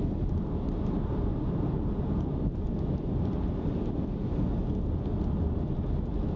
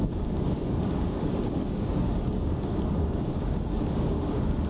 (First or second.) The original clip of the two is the first